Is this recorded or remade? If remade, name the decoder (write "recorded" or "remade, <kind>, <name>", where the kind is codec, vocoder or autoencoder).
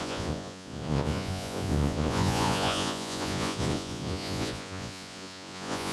remade, vocoder, Vocos